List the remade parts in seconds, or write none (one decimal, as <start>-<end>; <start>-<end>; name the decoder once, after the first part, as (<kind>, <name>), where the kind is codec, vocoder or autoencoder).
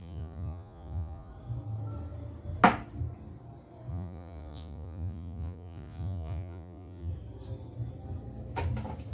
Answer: 0.0-1.3 (vocoder, Vocos); 3.9-7.1